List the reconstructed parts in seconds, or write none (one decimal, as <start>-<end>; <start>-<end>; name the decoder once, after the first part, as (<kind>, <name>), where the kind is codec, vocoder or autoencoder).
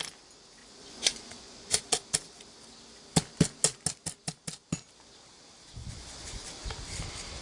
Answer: 0.6-1.9 (vocoder, Vocos); 5.8-6.5